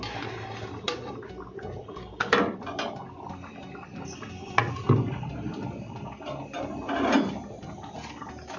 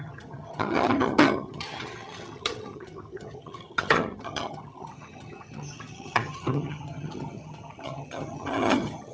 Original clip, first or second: first